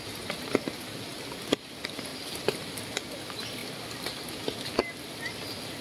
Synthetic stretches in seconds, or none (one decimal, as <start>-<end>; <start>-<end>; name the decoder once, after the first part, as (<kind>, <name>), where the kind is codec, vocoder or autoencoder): 2.1-2.7 (vocoder, BigVGAN v2)